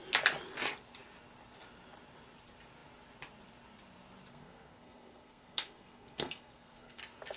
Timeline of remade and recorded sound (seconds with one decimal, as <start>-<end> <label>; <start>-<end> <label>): 0.0-4.3 recorded; 4.3-7.0 remade; 7.0-7.4 recorded